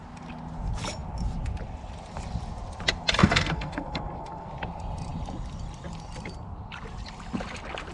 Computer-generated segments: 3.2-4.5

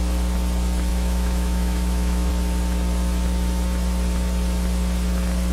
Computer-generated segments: 0.9-2.3

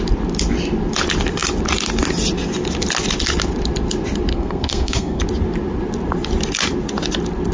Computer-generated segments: 4.3-5.2

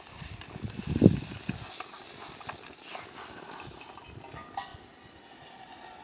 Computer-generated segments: none

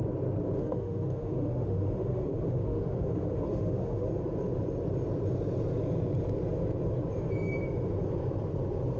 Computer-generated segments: 0.6-4.1